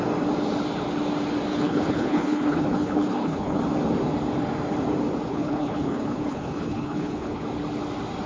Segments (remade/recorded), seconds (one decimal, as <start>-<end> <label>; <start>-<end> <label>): 0.0-1.5 recorded; 1.5-3.6 remade; 3.6-5.3 recorded; 5.3-7.4 remade; 7.4-8.3 recorded